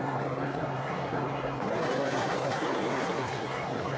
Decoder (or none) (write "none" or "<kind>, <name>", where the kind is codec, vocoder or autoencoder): codec, SNAC